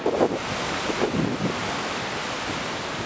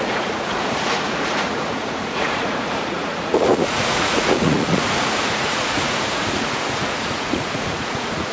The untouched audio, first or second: first